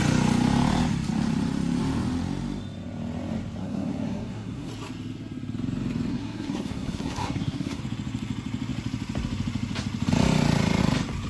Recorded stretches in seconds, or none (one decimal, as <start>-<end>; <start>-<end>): 0.0-3.6; 4.7-6.1; 7.8-11.3